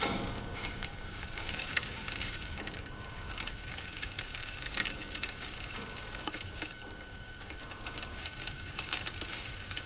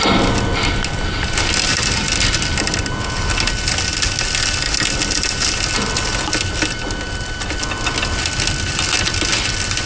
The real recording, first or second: second